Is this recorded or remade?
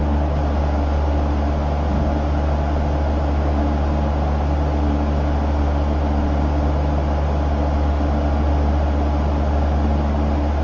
recorded